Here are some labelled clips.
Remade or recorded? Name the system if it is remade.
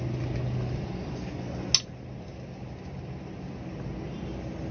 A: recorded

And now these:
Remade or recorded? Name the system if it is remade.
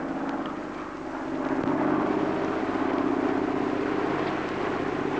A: recorded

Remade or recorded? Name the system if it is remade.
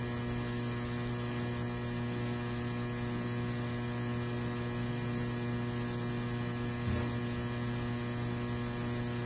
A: recorded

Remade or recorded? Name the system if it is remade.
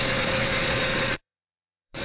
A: remade, vocoder, Vocos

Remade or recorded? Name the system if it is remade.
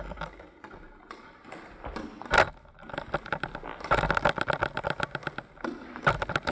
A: recorded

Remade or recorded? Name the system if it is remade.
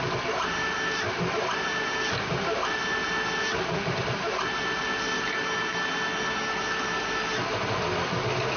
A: recorded